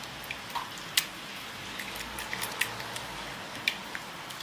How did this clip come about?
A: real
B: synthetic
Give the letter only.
A